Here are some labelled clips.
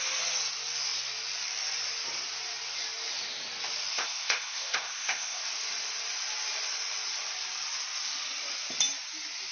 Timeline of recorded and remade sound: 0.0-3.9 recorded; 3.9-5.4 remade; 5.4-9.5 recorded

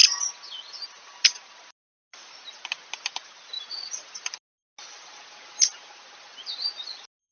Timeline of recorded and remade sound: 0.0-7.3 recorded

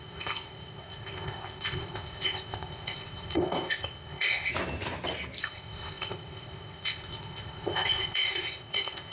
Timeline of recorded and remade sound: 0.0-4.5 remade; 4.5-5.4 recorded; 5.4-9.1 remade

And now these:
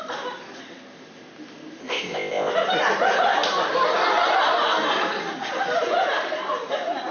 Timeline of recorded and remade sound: 0.0-1.8 recorded; 1.8-2.5 remade; 2.5-7.1 recorded

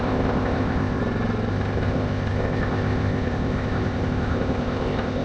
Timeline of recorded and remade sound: 0.0-1.0 remade; 1.0-1.5 recorded; 1.5-5.2 remade

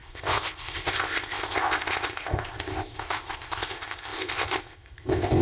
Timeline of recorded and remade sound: 0.0-5.4 remade

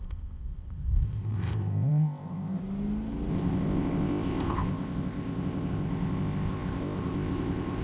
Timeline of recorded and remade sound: 0.0-2.6 remade; 2.6-3.3 recorded; 3.3-7.8 remade